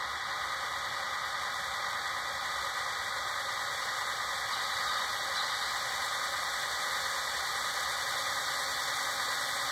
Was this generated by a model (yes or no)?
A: no